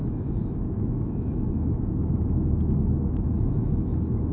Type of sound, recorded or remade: remade